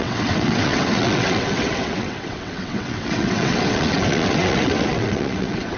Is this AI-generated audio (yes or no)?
yes